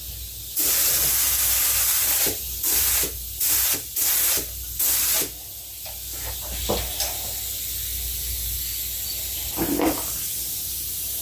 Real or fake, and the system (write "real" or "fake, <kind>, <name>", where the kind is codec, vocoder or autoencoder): real